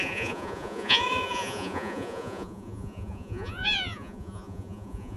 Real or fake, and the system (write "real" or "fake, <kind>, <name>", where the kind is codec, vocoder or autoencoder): fake, vocoder, Vocos